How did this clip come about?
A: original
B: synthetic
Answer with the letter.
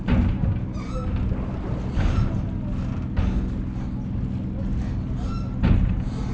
A